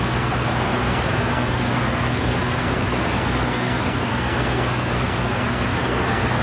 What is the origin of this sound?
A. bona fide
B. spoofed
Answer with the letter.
B